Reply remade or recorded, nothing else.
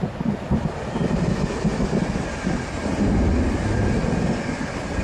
recorded